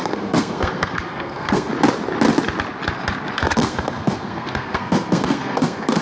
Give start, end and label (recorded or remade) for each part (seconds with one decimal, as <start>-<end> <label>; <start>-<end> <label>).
0.0-1.7 remade; 1.7-3.4 recorded; 3.4-6.0 remade